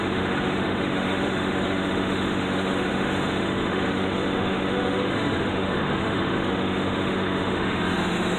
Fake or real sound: fake